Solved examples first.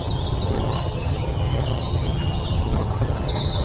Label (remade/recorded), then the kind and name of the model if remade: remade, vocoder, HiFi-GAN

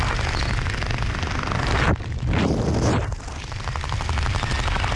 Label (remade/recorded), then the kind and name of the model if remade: recorded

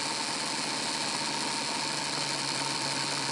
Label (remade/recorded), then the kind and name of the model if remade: recorded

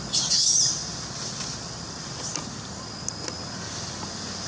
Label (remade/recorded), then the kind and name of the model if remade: recorded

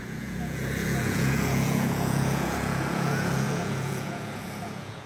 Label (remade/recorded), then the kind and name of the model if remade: remade, vocoder, Vocos